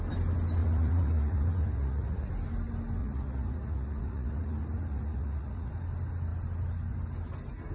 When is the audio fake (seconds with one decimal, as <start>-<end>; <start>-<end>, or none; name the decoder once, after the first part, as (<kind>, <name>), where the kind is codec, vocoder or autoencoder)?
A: 0.6-2.3 (vocoder, Vocos); 3.0-5.7